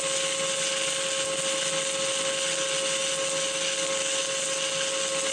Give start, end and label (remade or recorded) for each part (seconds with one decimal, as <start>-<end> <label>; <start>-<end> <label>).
0.0-5.3 recorded